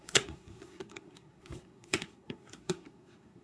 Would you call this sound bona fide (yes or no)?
no